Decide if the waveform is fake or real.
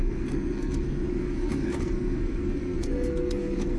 fake